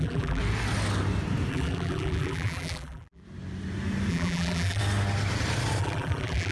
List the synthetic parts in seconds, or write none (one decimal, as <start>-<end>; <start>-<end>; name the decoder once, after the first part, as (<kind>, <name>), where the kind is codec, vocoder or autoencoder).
0.0-0.4 (vocoder, BigVGAN v2); 1.5-3.2; 4.1-4.8; 5.8-6.5